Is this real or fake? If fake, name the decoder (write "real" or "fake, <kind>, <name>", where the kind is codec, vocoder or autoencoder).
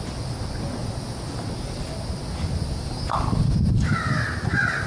real